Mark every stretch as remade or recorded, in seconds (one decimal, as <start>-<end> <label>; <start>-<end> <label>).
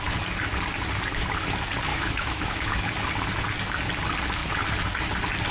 0.0-1.9 recorded; 1.9-2.9 remade; 2.9-5.5 recorded